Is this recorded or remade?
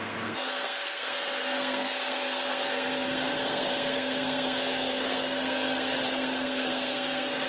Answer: remade